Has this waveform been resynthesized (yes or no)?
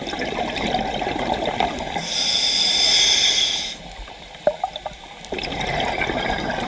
no